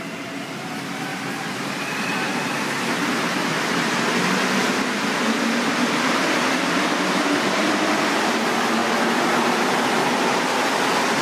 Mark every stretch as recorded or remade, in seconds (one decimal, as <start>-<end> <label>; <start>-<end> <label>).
0.0-1.1 recorded; 1.1-3.2 remade; 3.2-5.8 recorded; 5.8-8.3 remade; 8.3-11.2 recorded